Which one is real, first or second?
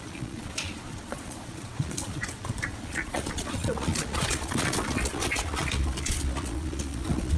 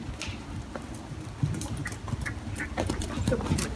second